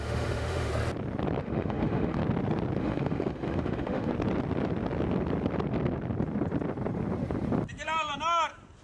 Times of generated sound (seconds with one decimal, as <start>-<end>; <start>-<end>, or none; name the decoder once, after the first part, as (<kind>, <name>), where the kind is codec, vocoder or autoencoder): 0.0-0.7 (autoencoder, DAC-VAE); 1.4-2.2; 2.8-4.1